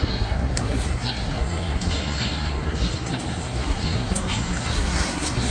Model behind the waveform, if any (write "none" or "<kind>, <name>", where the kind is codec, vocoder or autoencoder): codec, SNAC